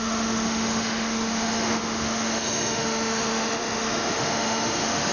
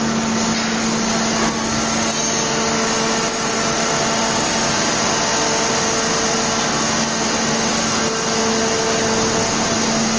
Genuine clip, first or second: second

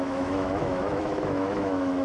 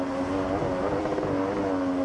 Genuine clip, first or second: second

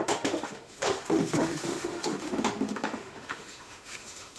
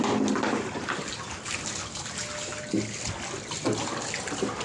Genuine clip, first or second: second